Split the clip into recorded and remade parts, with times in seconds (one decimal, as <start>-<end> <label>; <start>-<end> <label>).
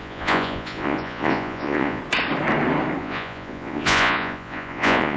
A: 0.0-2.0 remade; 2.0-3.0 recorded; 3.0-5.2 remade